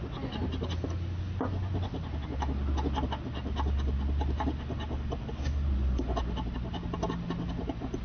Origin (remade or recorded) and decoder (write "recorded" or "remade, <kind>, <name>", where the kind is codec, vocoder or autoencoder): recorded